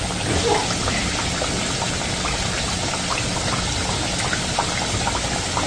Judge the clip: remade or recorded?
recorded